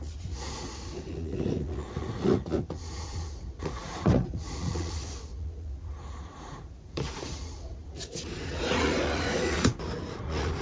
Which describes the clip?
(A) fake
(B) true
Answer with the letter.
A